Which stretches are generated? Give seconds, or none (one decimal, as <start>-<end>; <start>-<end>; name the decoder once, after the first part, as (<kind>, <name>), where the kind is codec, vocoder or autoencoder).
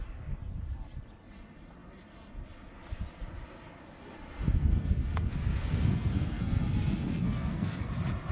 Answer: 4.6-7.9 (codec, SNAC)